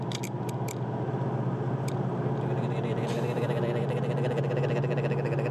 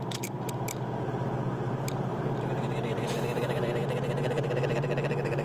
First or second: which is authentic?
first